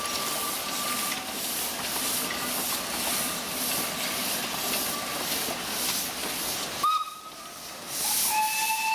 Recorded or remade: recorded